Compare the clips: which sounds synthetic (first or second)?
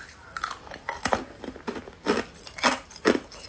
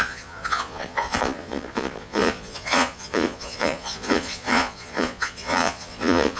second